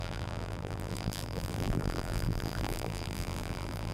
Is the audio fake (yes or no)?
yes